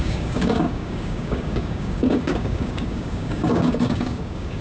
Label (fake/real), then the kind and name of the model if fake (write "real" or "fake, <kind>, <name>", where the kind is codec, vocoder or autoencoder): fake, codec, DAC